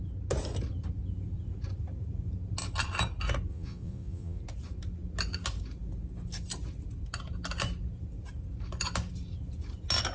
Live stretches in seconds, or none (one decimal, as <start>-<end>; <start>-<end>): 0.0-3.5; 4.4-10.1